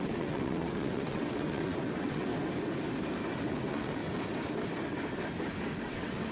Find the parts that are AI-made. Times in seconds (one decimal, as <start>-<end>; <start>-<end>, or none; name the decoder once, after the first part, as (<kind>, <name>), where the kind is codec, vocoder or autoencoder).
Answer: 0.0-2.3 (vocoder, WaveNeXt); 3.3-4.0; 5.8-6.3